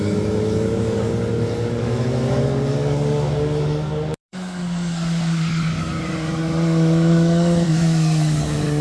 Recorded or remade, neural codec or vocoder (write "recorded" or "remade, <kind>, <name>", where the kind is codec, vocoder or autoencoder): remade, codec, DAC